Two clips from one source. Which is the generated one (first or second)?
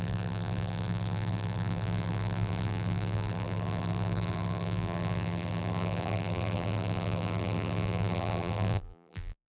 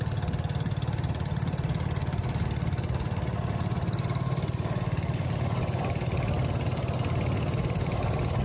first